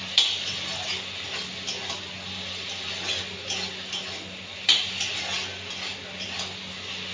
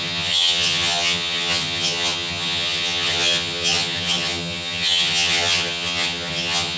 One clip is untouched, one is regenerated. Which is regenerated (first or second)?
second